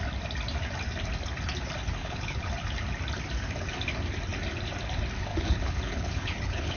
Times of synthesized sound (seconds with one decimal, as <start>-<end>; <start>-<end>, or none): 2.0-2.5; 5.3-6.8